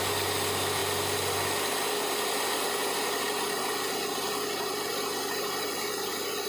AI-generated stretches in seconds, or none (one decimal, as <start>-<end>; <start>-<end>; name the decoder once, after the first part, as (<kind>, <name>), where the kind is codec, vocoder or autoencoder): none